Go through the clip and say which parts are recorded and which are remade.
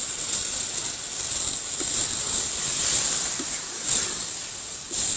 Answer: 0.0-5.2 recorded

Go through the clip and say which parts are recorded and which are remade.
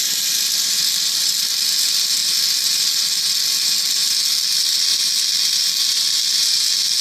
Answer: 0.0-7.0 recorded